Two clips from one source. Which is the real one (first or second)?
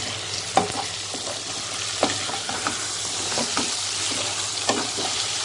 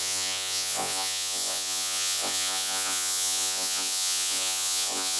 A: first